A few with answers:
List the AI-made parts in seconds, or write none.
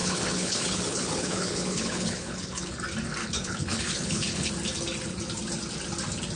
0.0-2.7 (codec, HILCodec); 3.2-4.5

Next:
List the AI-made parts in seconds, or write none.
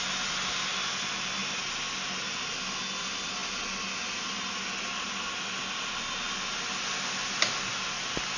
none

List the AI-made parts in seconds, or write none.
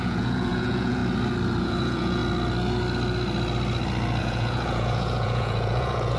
0.0-1.0 (vocoder, Vocos); 1.6-2.2; 4.2-6.2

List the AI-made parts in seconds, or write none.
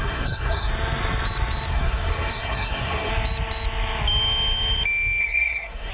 0.0-0.7 (codec, SNAC); 1.7-3.1; 5.2-5.9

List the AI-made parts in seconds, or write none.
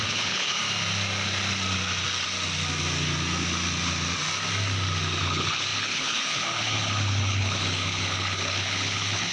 0.0-0.6 (codec, HILCodec); 5.2-9.3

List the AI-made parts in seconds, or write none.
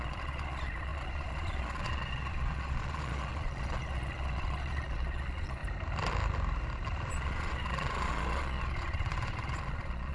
0.0-5.6 (vocoder, Vocos); 7.1-10.1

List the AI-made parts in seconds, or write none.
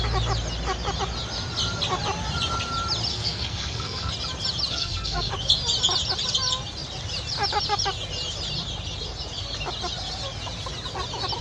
3.1-4.1 (codec, SNAC); 4.7-5.3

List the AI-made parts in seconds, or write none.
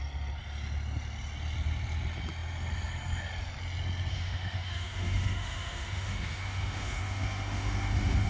4.1-8.3 (autoencoder, DAC-VAE)